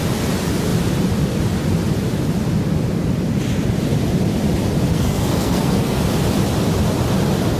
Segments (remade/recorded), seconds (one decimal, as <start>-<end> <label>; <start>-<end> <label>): 0.0-4.9 recorded; 4.9-6.0 remade; 6.0-7.6 recorded